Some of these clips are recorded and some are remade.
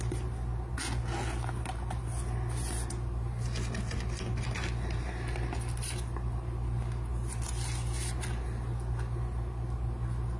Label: recorded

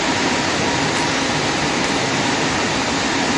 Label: recorded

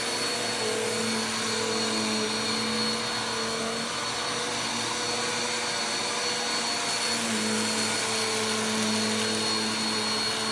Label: recorded